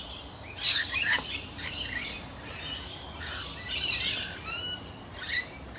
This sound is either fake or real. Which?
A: real